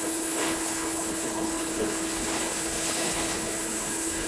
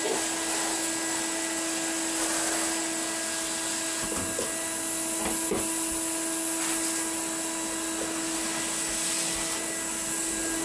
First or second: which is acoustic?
second